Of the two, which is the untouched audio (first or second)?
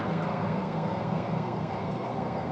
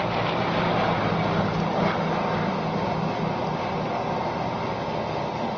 second